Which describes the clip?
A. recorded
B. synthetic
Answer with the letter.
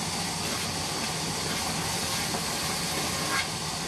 A